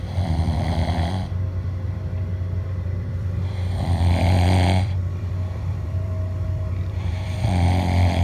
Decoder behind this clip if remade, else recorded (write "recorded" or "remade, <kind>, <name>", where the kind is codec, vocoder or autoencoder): remade, vocoder, BigVGAN v2